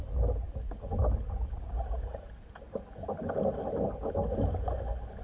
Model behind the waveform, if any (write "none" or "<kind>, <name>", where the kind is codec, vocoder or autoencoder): none